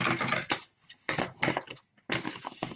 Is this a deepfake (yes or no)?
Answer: no